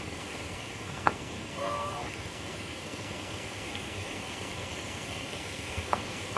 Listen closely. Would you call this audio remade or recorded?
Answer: remade